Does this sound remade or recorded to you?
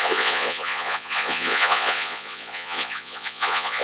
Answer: remade